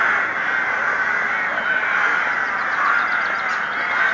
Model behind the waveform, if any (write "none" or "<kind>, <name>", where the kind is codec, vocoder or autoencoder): none